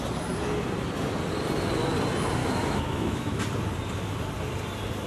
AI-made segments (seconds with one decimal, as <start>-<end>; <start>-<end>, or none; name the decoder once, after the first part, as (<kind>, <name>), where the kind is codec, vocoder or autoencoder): 2.4-3.4 (autoencoder, DAC-VAE)